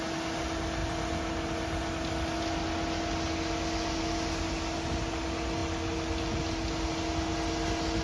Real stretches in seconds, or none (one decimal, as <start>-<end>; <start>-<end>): 0.0-8.0